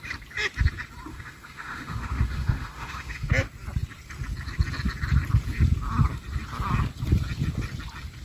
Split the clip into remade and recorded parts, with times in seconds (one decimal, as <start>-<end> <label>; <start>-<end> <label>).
0.0-1.1 recorded; 1.1-3.3 remade; 3.3-8.2 recorded